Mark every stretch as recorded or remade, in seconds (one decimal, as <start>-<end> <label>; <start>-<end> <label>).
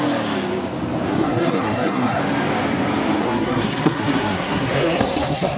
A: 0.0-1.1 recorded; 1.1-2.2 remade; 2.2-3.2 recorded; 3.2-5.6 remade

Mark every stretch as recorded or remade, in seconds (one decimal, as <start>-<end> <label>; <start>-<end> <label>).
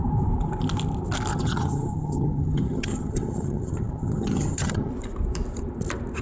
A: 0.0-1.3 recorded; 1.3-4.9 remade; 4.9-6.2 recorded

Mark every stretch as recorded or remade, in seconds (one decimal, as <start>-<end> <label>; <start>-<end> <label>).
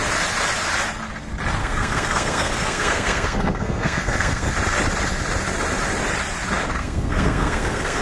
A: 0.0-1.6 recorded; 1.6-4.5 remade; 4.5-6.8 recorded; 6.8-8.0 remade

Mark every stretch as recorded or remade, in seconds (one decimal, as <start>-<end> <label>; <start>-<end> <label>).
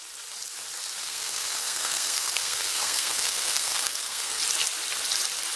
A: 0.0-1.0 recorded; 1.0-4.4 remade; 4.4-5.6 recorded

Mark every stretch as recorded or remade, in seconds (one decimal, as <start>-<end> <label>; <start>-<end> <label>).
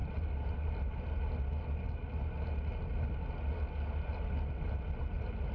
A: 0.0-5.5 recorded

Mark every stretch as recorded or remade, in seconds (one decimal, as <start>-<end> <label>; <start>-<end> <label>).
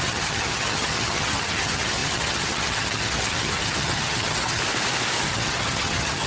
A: 0.0-4.6 remade; 4.6-5.2 recorded; 5.2-6.3 remade